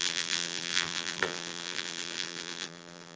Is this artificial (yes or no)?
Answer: yes